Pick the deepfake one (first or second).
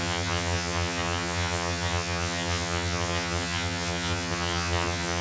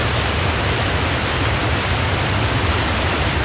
first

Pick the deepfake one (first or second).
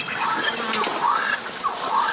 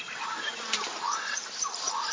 second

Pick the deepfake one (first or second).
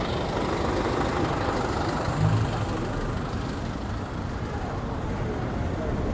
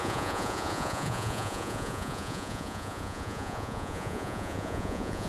second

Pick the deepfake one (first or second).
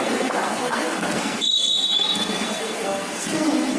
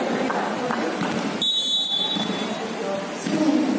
first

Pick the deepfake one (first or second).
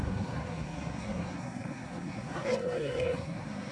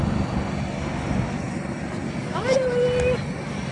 first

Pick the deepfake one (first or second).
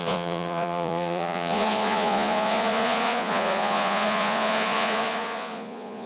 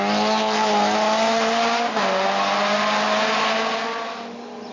first